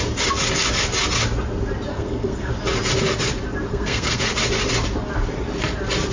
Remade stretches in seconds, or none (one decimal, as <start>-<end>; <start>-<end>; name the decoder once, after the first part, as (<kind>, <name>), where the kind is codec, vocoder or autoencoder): 1.9-2.5 (codec, SNAC); 3.7-4.2